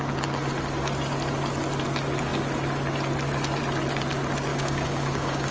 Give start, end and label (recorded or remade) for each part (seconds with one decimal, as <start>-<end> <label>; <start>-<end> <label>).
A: 0.0-4.5 recorded; 4.5-5.5 remade